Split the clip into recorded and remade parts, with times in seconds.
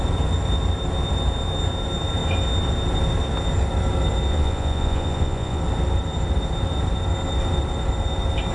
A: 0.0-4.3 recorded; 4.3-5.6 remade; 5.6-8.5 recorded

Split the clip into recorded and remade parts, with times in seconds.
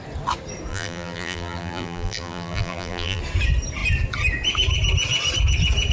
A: 0.0-0.7 recorded; 0.7-3.2 remade; 3.2-5.9 recorded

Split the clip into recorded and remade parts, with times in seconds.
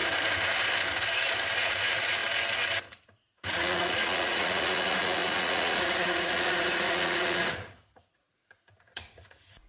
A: 0.0-1.6 recorded; 1.6-2.2 remade; 2.2-2.9 recorded; 2.9-9.7 remade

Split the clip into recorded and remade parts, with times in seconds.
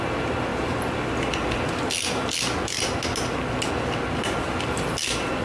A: 0.0-5.4 recorded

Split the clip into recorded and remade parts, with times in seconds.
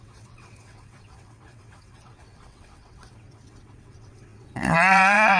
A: 0.0-5.4 remade